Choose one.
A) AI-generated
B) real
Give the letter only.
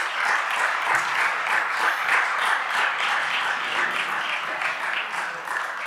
B